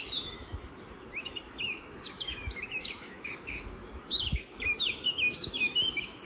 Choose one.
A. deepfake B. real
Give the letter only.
A